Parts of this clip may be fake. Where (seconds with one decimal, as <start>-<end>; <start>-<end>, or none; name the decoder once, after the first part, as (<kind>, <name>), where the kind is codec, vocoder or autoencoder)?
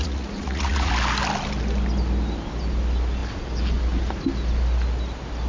0.0-0.9 (vocoder, Vocos)